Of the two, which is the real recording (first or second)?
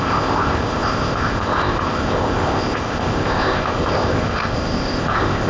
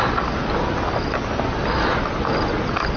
second